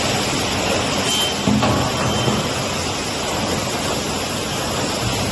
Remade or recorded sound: recorded